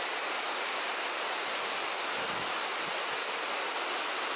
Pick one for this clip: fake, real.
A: real